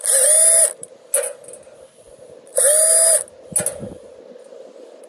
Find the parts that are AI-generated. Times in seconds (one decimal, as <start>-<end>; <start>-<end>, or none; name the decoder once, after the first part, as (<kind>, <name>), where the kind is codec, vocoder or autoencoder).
none